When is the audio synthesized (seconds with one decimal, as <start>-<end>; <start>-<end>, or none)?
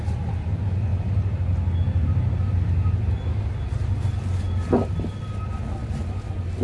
5.8-6.6